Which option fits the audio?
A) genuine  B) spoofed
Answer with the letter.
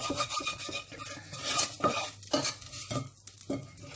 A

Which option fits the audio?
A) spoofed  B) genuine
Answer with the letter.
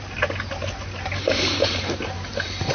B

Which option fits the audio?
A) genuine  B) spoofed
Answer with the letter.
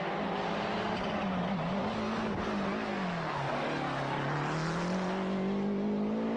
A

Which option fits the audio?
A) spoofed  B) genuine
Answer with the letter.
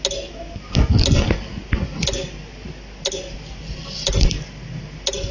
B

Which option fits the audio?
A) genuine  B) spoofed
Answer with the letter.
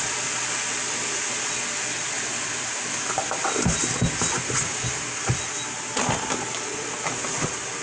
A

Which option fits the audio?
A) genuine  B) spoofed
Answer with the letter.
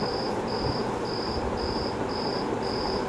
A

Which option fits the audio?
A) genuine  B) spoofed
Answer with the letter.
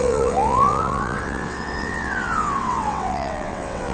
B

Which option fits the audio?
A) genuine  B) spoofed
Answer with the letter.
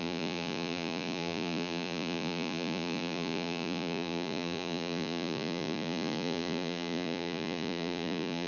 B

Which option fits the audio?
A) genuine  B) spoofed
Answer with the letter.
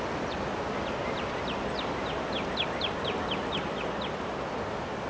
A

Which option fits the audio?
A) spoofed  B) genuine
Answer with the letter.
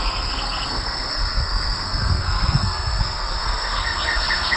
A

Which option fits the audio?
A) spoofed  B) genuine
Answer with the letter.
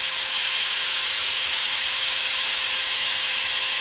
A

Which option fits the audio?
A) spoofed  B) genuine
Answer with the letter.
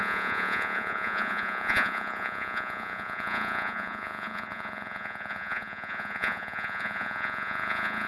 A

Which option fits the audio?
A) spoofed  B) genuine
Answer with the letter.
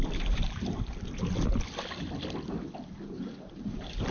B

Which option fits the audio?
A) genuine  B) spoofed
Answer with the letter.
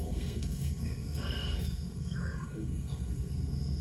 B